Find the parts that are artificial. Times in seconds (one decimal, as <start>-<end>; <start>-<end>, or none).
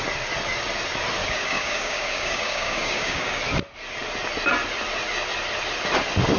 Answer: 1.2-3.4